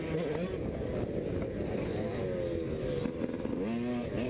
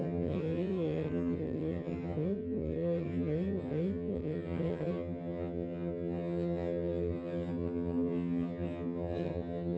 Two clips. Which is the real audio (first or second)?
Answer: first